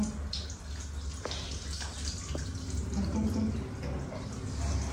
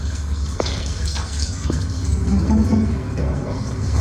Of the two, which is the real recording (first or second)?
first